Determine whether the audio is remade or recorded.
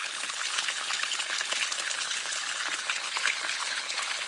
remade